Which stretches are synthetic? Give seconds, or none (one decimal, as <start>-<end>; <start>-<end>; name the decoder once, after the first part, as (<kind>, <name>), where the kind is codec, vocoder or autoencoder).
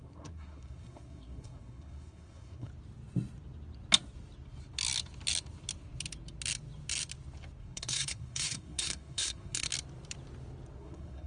0.0-2.7 (codec, SNAC); 7.6-9.7; 10.8-11.3